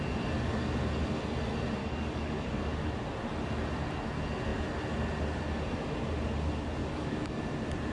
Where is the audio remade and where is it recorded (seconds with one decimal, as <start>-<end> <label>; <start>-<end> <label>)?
0.0-1.8 recorded; 1.8-2.6 remade; 2.6-6.8 recorded; 6.8-7.4 remade; 7.4-7.9 recorded